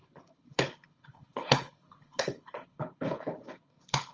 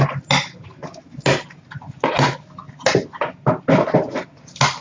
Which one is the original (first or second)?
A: second